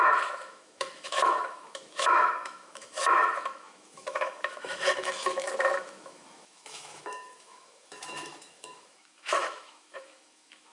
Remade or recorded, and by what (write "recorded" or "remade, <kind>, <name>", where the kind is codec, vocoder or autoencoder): remade, autoencoder, DAC-VAE